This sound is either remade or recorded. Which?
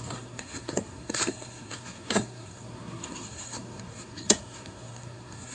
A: remade